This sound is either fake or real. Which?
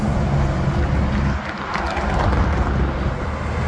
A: real